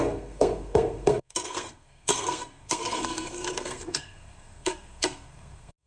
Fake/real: fake